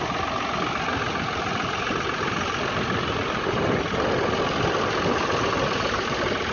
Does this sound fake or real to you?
real